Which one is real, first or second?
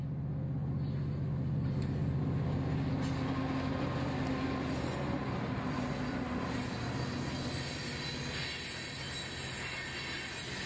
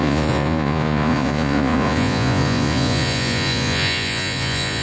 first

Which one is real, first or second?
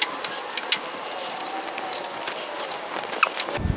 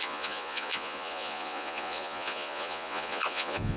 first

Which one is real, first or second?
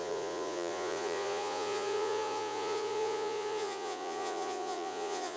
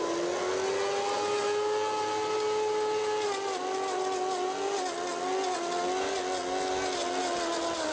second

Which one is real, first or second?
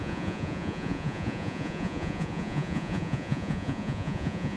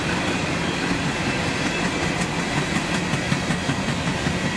second